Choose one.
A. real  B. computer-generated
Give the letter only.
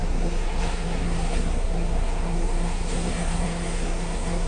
B